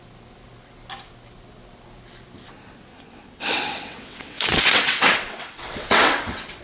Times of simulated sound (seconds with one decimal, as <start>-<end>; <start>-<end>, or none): 2.9-6.6